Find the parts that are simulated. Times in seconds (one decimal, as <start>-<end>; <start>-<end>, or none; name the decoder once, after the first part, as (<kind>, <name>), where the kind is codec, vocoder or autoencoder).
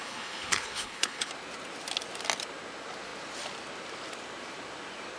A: 0.0-1.3 (codec, HILCodec)